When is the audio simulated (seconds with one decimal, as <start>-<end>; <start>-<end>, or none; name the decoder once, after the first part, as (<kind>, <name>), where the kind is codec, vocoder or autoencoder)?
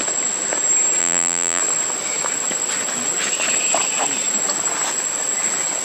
1.0-1.6 (vocoder, BigVGAN v2)